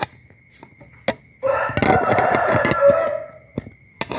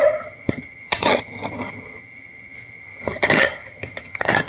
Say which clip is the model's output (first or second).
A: second